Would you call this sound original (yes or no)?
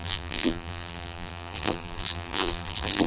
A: no